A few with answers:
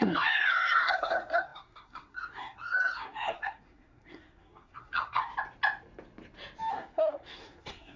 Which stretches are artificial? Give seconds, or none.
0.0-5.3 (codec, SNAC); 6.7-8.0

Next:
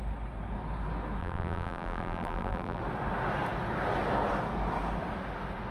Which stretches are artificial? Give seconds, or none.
1.2-2.8 (vocoder, BigVGAN v2)

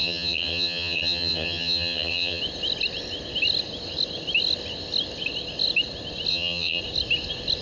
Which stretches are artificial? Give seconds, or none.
0.0-2.4 (vocoder, HiFi-GAN); 6.3-6.8